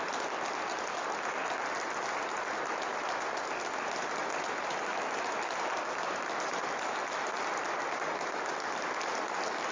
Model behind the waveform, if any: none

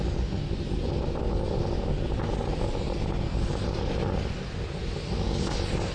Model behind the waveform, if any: none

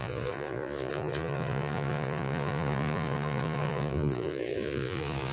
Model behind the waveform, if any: vocoder, Vocos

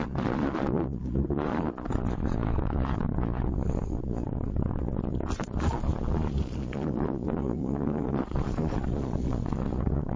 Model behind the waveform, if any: vocoder, Vocos